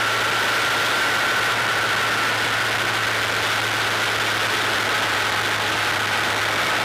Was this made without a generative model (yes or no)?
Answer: yes